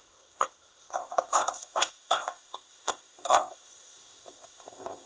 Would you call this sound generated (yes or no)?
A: yes